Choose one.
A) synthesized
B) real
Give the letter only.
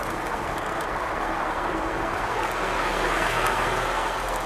A